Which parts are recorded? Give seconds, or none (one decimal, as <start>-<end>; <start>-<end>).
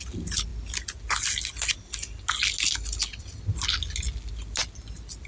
0.0-5.3